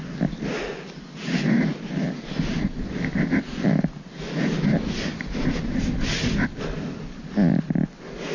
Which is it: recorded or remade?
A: recorded